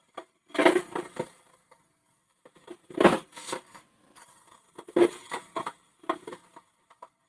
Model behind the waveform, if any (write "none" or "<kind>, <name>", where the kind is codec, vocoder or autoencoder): none